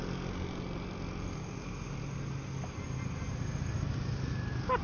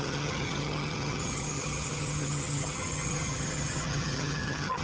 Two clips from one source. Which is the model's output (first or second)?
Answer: second